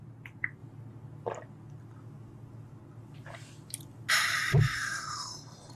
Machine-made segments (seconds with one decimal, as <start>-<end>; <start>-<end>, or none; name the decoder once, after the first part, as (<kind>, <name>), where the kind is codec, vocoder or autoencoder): 0.0-0.6 (vocoder, BigVGAN v2); 4.1-5.8